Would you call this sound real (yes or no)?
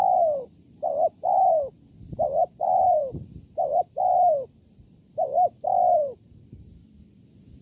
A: no